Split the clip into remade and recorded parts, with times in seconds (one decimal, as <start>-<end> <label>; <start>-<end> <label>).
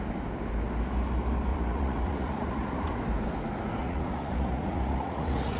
0.0-1.5 recorded; 1.5-2.9 remade; 2.9-3.8 recorded; 3.8-5.6 remade